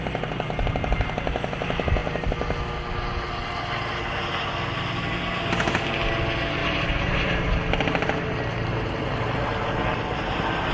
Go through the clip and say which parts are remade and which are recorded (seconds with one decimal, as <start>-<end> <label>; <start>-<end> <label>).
0.0-6.6 recorded; 6.6-7.3 remade; 7.3-10.7 recorded